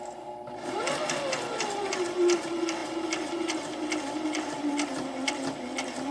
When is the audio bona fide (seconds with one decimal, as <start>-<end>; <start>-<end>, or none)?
0.0-6.1